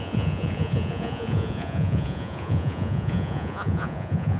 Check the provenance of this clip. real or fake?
fake